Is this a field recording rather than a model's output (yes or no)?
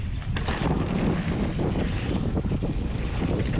yes